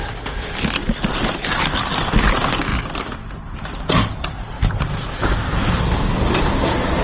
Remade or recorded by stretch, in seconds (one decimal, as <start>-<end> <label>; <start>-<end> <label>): 0.0-7.0 recorded